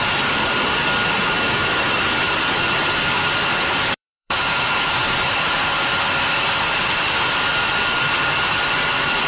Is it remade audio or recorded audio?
remade